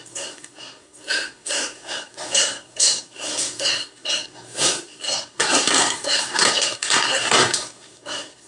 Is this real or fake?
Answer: fake